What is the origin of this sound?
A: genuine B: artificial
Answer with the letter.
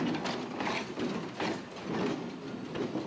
A